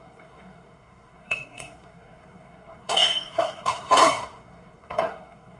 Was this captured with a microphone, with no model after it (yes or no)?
no